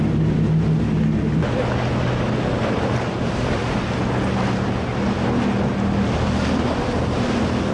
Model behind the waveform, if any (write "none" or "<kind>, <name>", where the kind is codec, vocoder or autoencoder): none